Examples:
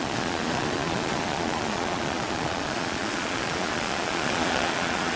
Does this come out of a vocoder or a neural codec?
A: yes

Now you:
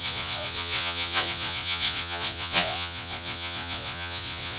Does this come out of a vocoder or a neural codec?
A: yes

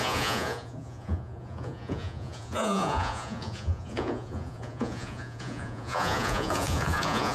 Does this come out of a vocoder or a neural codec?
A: yes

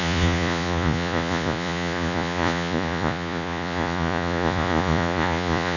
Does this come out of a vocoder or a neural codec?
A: yes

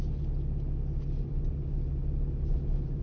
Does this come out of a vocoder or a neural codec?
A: no